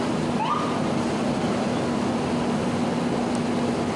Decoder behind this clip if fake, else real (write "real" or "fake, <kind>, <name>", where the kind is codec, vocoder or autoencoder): real